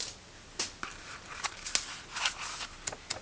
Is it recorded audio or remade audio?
recorded